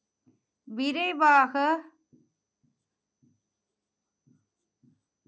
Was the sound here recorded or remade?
recorded